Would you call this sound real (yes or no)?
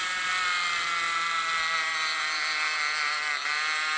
yes